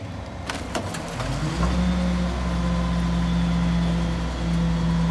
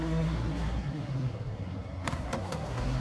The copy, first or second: second